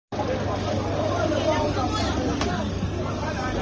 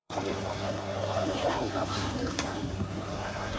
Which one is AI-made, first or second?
second